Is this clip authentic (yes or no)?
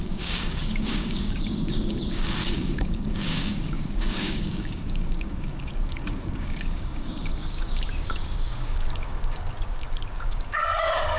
no